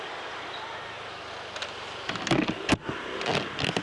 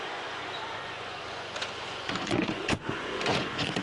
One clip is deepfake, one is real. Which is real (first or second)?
first